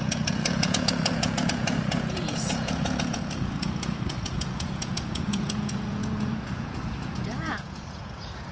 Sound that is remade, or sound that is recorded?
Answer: remade